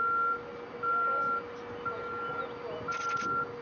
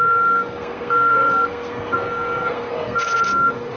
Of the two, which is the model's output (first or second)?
second